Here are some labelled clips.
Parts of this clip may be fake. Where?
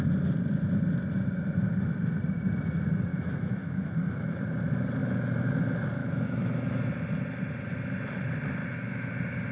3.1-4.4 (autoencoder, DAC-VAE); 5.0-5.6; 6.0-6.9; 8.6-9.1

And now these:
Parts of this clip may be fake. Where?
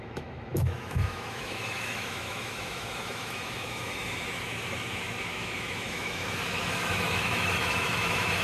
0.0-8.4 (autoencoder, DAC-VAE)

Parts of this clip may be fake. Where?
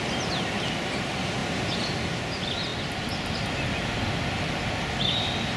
none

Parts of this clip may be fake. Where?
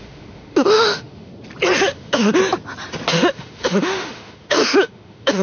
0.0-1.3 (autoencoder, DAC-VAE); 1.8-2.4; 3.1-5.4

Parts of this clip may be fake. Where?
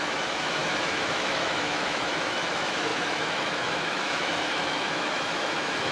0.0-5.9 (autoencoder, DAC-VAE)